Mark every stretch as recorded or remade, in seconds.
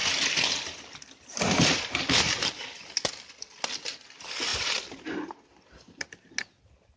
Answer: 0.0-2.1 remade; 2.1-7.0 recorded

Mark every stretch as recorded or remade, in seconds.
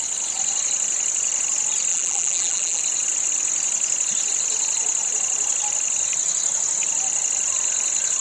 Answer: 0.0-1.9 recorded; 1.9-2.8 remade; 2.8-8.2 recorded